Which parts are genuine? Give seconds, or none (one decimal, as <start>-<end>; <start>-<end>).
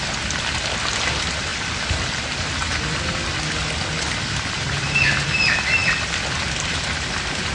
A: 0.0-7.5